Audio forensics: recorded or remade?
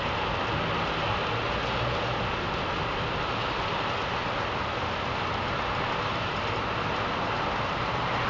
recorded